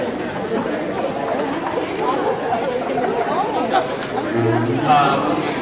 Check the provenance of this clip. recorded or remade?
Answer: recorded